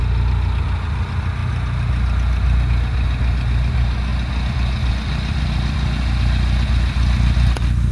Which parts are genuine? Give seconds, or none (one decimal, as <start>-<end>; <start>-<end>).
0.0-7.9